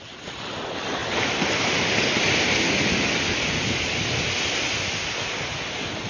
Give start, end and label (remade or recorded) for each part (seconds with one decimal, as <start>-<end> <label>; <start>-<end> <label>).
0.0-6.1 recorded